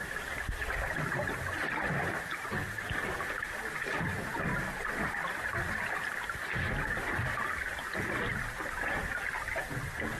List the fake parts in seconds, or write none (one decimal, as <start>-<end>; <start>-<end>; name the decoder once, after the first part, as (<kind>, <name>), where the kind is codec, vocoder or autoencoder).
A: 3.6-4.5 (vocoder, BigVGAN v2)